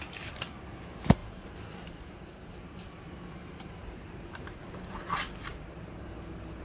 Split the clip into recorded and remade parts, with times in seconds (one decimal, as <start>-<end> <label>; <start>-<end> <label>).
0.0-1.2 recorded; 1.2-5.0 remade; 5.0-5.5 recorded; 5.5-6.6 remade